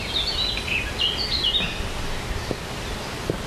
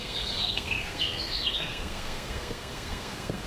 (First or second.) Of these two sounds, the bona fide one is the first